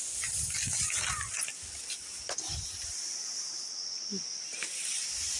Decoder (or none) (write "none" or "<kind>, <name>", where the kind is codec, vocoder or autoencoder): none